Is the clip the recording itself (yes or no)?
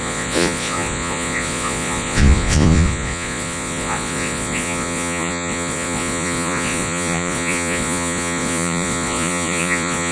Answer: no